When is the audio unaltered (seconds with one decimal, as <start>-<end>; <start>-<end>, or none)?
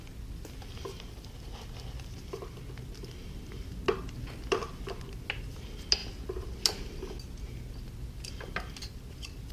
0.0-9.5